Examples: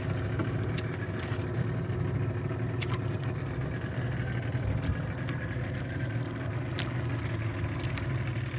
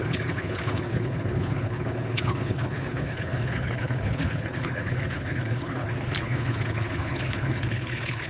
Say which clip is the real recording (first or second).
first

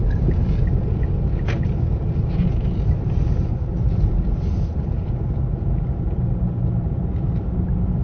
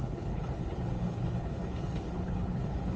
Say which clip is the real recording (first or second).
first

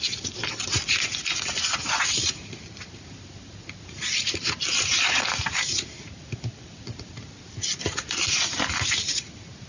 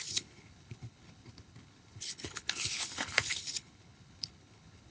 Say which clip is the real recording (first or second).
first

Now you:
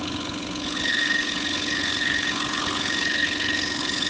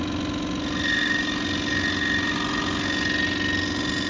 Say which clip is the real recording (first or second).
second